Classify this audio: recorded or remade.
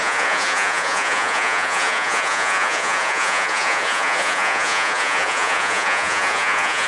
remade